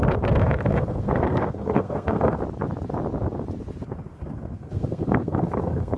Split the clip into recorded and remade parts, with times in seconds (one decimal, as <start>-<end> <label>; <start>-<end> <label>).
0.0-2.4 remade; 2.4-4.1 recorded; 4.1-6.0 remade